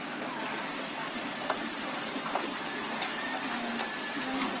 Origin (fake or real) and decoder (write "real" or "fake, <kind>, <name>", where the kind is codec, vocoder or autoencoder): real